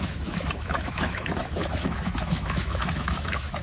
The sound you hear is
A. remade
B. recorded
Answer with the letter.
A